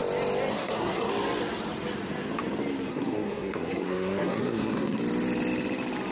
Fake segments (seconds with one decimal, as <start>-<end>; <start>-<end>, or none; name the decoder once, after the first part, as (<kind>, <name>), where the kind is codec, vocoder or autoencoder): 0.5-1.1 (codec, SNAC); 2.9-5.0